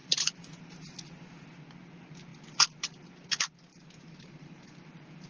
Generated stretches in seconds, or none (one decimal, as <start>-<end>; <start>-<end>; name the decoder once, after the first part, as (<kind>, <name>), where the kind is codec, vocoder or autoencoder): 0.0-1.0 (vocoder, BigVGAN v2); 3.7-5.3